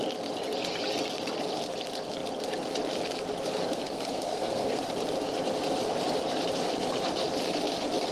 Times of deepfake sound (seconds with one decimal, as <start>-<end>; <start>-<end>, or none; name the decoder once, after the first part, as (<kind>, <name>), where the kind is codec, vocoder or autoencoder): 3.7-4.8 (codec, SNAC)